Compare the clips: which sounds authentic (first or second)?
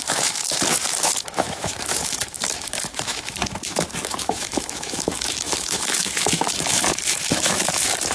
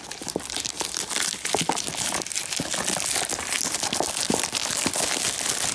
second